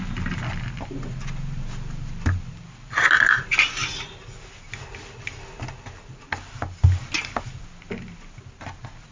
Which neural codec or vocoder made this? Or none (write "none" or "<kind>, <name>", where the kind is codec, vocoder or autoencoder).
none